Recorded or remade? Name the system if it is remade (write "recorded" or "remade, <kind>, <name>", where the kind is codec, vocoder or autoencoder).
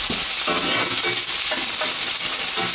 recorded